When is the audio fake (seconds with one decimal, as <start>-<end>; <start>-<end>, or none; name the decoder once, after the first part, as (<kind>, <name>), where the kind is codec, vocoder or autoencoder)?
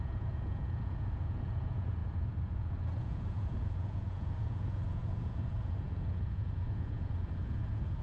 0.0-8.0 (vocoder, Vocos)